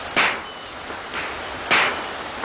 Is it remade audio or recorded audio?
recorded